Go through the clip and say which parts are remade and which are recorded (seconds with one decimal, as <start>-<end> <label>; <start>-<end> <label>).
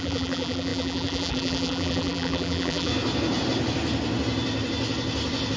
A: 0.0-2.9 remade; 2.9-5.6 recorded